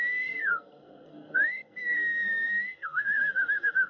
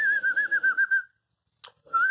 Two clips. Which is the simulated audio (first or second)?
first